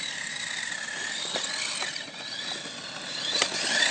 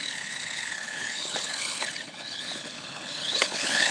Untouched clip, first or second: first